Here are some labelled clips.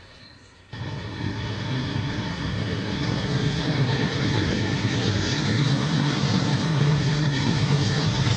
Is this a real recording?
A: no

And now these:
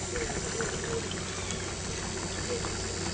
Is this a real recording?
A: yes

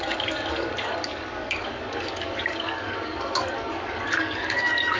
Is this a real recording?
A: no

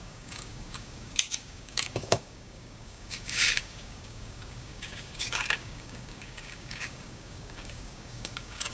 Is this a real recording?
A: no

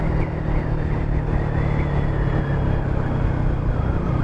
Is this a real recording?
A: yes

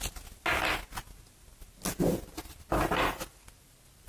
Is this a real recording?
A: yes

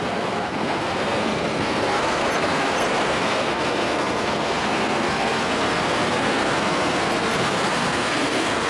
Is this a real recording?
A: no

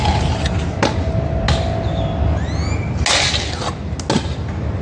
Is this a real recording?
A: yes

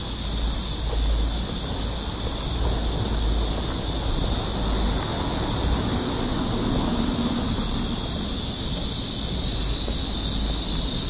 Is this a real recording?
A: yes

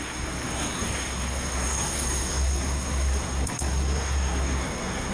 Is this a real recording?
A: no